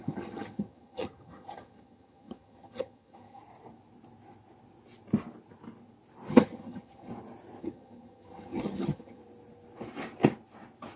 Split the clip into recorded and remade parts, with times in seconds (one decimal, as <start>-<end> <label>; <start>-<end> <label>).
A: 0.0-3.4 remade; 3.4-6.3 recorded; 6.3-7.1 remade; 7.1-7.6 recorded; 7.6-9.2 remade; 9.2-11.0 recorded